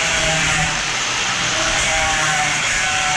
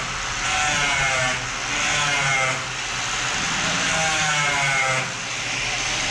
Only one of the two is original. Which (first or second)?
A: second